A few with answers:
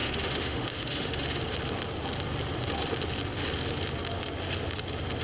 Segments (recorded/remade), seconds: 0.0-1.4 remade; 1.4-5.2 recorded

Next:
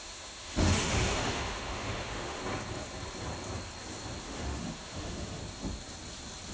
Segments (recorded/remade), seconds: 0.0-2.4 remade; 2.4-4.2 recorded; 4.2-5.4 remade; 5.4-6.5 recorded

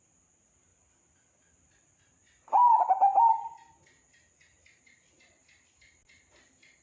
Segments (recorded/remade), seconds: 0.0-6.8 recorded

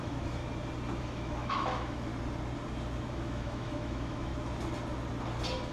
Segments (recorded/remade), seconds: 0.0-0.4 remade; 0.4-1.0 recorded; 1.0-2.1 remade; 2.1-3.1 recorded; 3.1-4.3 remade; 4.3-5.7 recorded

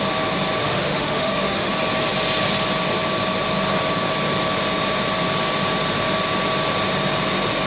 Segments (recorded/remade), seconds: 0.0-0.6 recorded; 0.6-1.7 remade; 1.7-7.7 recorded

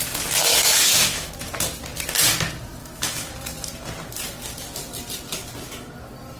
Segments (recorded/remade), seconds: 0.0-0.4 recorded; 0.4-1.3 remade; 1.3-2.8 recorded; 2.8-3.3 remade; 3.3-6.4 recorded

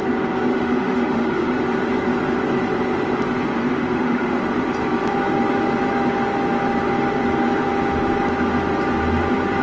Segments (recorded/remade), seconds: 0.0-0.5 recorded; 0.5-1.6 remade; 1.6-3.7 recorded; 3.7-4.4 remade; 4.4-9.6 recorded

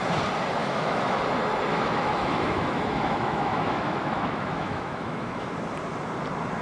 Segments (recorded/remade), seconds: 0.0-0.6 recorded; 0.6-1.2 remade; 1.2-1.7 recorded; 1.7-5.5 remade; 5.5-6.6 recorded